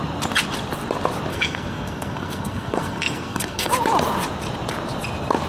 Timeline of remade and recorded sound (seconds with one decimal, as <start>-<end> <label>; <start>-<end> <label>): 0.0-1.3 recorded; 1.3-3.7 remade; 3.7-5.5 recorded